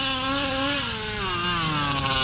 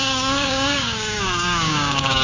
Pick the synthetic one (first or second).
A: second